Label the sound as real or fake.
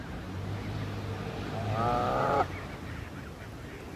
real